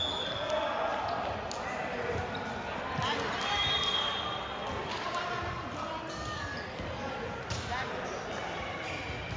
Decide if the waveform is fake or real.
real